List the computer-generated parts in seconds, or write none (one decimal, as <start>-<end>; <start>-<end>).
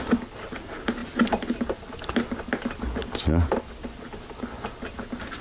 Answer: none